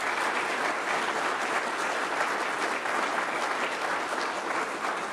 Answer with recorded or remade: recorded